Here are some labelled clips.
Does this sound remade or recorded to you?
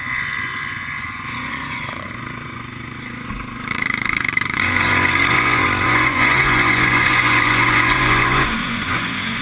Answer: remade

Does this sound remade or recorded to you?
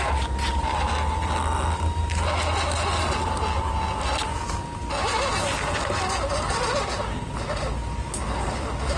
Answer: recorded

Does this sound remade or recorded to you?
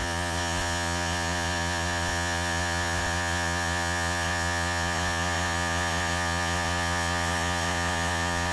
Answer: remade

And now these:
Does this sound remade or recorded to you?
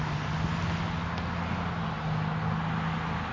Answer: recorded